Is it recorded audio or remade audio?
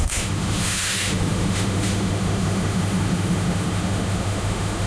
remade